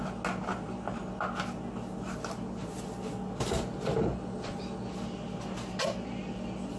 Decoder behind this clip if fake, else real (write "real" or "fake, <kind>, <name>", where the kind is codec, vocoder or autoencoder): real